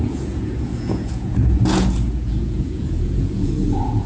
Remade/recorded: remade